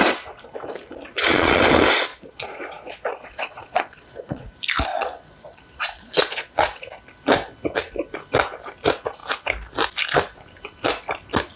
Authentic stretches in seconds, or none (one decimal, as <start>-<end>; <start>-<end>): 0.0-1.1; 1.6-2.1; 4.5-4.9; 6.8-11.6